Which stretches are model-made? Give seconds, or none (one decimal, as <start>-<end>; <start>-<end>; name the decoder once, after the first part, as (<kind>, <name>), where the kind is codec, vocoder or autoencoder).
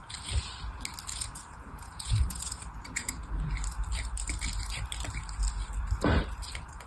1.1-3.3 (vocoder, Vocos)